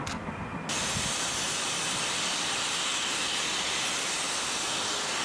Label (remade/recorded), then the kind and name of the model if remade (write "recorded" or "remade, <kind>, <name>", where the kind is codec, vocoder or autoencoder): recorded